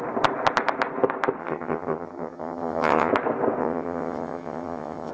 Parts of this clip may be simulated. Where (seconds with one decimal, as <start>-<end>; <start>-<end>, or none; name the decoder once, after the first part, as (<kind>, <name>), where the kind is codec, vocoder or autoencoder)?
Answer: 1.4-3.1 (vocoder, HiFi-GAN); 3.6-5.1